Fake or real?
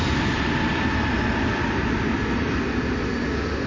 real